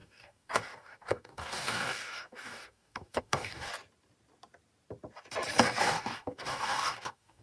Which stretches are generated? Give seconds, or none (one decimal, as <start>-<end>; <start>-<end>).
0.0-3.7; 5.8-7.4